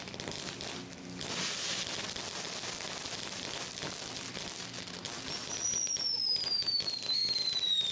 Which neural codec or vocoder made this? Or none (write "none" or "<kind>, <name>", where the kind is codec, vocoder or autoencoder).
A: none